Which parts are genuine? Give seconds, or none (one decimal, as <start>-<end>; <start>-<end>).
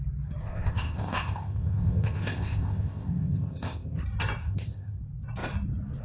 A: 0.0-0.4; 4.0-4.4; 5.0-6.0